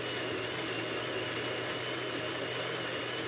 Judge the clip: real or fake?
real